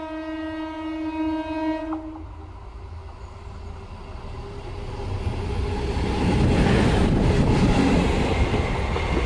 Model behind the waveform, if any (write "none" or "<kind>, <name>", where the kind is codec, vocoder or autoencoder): none